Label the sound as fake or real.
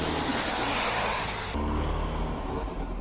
real